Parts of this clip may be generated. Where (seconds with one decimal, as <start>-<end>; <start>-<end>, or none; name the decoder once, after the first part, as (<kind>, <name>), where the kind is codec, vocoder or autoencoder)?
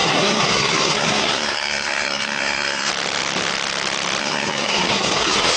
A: 0.0-2.9 (codec, SNAC); 4.2-5.6